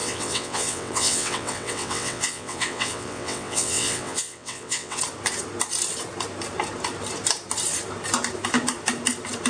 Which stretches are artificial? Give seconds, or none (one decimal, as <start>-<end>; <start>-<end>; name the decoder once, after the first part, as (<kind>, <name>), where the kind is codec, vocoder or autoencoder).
0.0-5.0 (vocoder, WaveNeXt)